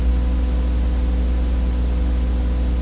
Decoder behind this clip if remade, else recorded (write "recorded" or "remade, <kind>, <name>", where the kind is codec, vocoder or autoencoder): recorded